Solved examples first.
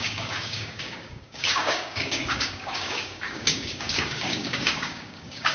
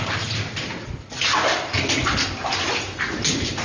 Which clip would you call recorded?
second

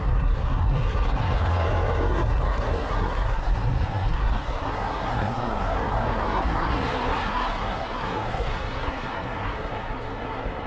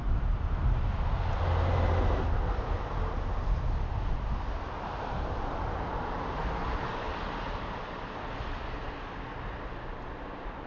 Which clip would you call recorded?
second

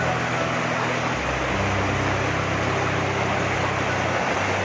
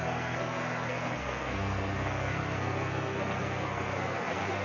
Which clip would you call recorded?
first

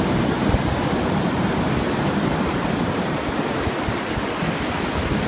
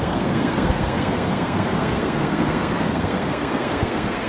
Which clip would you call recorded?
first